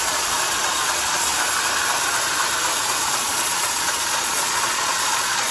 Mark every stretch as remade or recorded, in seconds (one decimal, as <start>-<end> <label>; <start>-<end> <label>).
0.0-1.3 remade; 1.3-3.0 recorded; 3.0-5.5 remade